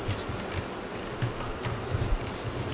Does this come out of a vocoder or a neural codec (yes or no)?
no